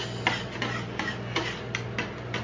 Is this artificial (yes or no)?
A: no